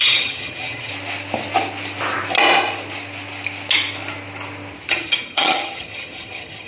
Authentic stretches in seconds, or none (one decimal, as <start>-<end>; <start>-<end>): 0.9-4.9